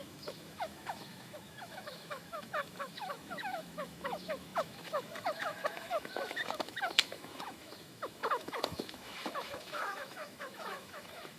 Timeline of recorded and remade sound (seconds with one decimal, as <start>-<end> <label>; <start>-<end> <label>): 0.0-11.4 remade